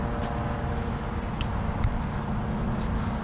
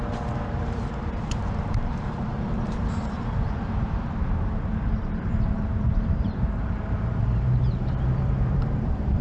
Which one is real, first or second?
first